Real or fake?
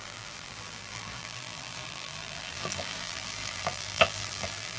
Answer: fake